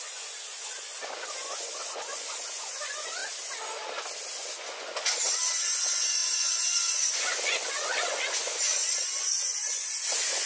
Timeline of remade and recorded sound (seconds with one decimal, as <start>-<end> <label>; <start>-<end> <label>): 0.0-3.2 remade; 3.2-4.5 recorded; 4.5-10.5 remade